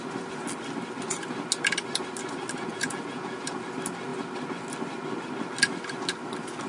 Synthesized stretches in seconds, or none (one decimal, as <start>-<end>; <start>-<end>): 2.7-3.5